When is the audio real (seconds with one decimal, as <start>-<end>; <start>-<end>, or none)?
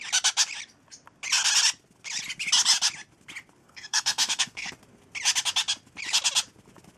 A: 0.0-3.6; 4.7-7.0